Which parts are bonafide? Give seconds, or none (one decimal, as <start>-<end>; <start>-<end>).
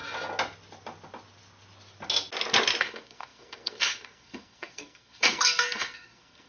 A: 0.0-2.8